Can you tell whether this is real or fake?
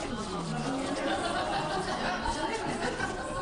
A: real